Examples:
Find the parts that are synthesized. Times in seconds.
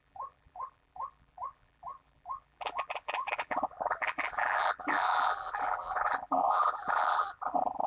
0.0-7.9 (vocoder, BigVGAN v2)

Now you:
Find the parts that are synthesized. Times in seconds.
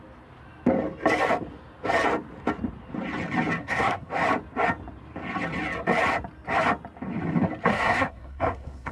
3.6-4.1 (codec, SNAC); 7.7-8.9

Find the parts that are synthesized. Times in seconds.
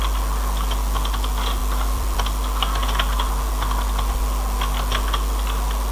1.6-2.2 (vocoder, BigVGAN v2)